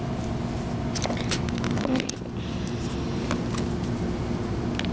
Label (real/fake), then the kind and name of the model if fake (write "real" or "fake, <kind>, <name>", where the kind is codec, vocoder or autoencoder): real